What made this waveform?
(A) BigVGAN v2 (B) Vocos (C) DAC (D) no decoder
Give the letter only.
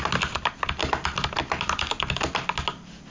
D